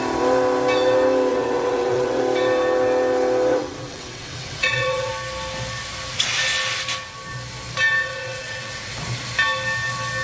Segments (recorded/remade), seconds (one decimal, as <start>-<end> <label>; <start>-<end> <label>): 0.0-1.3 recorded; 1.3-2.2 remade; 2.2-3.5 recorded; 3.5-5.1 remade; 5.1-8.0 recorded; 8.0-8.9 remade; 8.9-10.2 recorded